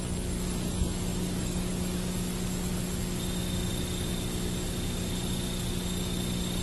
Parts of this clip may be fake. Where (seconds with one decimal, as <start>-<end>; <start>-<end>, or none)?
1.1-1.7

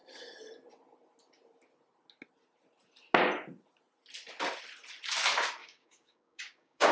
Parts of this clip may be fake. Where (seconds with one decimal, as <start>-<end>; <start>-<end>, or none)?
5.6-6.9

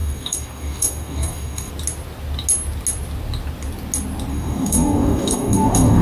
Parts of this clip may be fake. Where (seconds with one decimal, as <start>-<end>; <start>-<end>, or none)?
0.0-1.7; 4.3-6.0

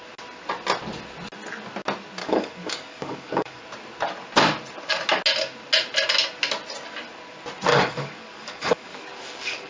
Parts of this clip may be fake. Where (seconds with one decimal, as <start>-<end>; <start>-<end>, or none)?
2.2-3.6; 7.7-9.7

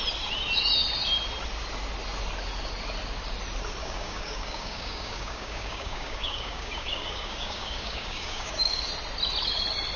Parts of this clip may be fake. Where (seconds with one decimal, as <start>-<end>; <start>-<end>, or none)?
3.8-8.9

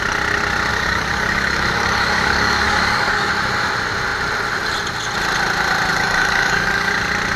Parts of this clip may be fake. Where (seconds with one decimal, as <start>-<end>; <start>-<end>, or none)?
0.7-3.3; 5.9-6.9

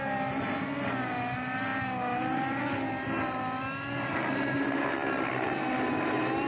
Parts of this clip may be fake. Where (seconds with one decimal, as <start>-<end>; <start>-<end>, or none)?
none

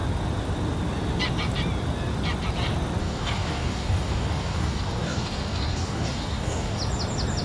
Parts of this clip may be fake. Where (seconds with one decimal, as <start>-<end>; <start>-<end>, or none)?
3.0-6.8